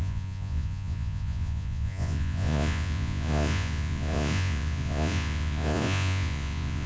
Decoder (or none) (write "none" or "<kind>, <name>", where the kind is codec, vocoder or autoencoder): vocoder, Vocos